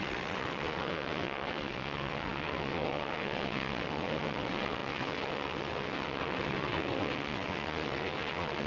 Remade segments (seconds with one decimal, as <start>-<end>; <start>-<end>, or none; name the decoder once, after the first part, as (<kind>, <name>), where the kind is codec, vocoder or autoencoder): 0.0-8.7 (vocoder, WaveNeXt)